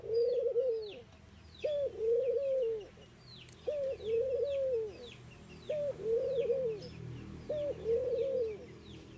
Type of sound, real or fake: real